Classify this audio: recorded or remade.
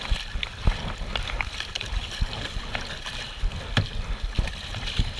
recorded